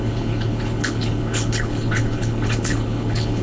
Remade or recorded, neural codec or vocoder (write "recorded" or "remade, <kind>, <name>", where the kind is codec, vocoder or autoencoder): remade, codec, HILCodec